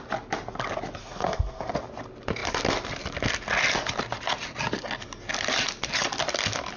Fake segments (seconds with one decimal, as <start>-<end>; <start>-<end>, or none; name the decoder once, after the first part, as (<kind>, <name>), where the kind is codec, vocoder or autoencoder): 1.0-1.7 (codec, SNAC)